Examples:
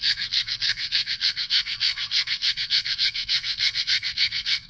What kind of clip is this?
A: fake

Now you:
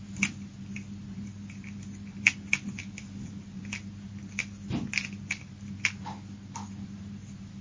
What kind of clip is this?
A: real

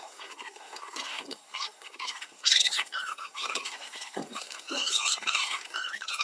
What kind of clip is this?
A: fake